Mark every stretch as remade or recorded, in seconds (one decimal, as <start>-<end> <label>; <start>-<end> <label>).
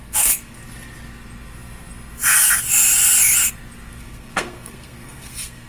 0.0-0.6 remade; 0.6-4.0 recorded; 4.0-5.7 remade